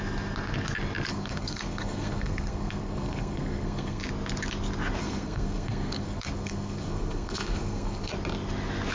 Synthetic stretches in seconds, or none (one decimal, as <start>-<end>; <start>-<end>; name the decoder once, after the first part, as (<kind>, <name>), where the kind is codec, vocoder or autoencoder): 1.1-4.0 (codec, SNAC); 5.0-8.1